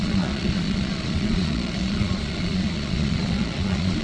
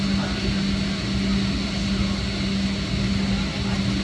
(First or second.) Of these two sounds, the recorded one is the second